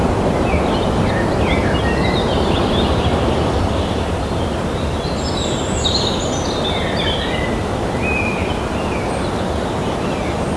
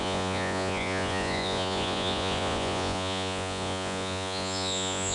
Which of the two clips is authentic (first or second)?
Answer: first